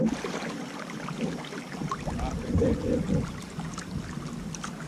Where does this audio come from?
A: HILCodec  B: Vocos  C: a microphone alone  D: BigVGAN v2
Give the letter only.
D